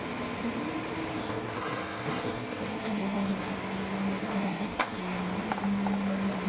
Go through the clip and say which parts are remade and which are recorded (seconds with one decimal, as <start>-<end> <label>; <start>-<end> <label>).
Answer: 0.0-1.1 recorded; 1.1-3.5 remade; 3.5-4.2 recorded; 4.2-5.2 remade; 5.2-6.5 recorded